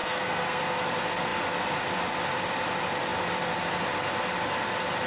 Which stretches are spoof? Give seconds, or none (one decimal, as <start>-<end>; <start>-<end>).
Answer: 0.0-0.6